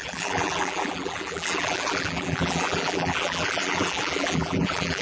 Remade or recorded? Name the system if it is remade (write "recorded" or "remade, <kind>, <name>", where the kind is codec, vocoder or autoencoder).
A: remade, vocoder, BigVGAN v2